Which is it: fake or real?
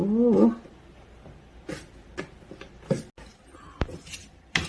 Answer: real